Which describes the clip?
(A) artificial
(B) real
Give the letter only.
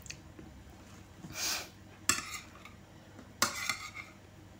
B